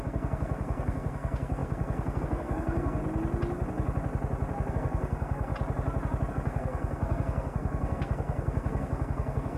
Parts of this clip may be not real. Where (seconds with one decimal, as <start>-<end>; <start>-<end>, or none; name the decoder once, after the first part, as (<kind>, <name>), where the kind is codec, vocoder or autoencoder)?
0.0-3.0 (codec, SNAC); 4.7-5.5; 6.3-9.6